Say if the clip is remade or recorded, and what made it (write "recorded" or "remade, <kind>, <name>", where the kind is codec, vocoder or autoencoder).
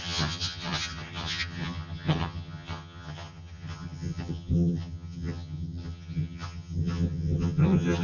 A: remade, vocoder, HiFi-GAN